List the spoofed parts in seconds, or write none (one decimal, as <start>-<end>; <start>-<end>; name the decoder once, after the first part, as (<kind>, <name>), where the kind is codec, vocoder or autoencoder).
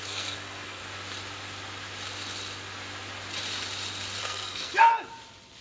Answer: 0.0-0.8 (codec, SNAC); 4.2-4.9